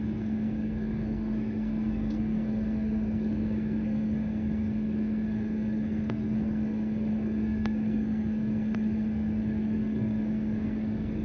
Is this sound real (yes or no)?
no